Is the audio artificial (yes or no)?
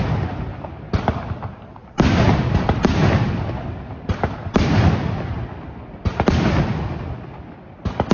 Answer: no